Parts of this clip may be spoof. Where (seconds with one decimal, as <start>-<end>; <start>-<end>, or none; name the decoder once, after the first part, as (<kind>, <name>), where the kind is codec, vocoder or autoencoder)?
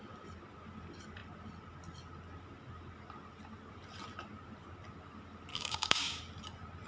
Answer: 5.5-6.2 (codec, DAC)